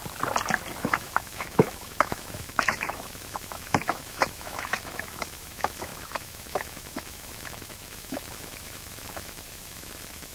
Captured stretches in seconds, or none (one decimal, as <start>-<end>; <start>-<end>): 0.0-0.8